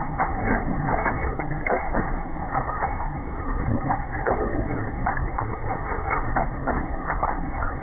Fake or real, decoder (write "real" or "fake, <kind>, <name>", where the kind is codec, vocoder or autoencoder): fake, codec, SNAC